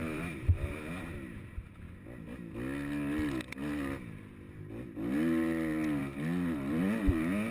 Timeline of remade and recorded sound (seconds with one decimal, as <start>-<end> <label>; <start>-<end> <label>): 0.0-0.7 remade; 0.7-7.5 recorded